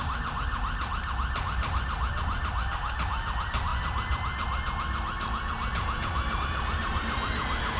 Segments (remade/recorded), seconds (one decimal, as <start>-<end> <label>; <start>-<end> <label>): 0.0-7.8 recorded